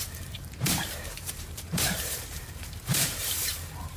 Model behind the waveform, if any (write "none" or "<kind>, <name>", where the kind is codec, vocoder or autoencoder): vocoder, BigVGAN v2